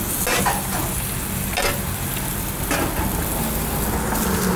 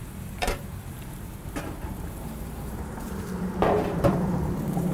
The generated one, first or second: second